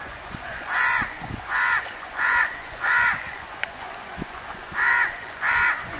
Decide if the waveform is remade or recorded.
remade